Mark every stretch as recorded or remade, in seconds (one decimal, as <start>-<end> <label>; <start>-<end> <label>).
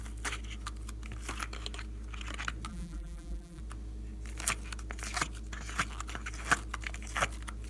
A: 0.0-2.7 recorded; 2.7-3.6 remade; 3.6-7.7 recorded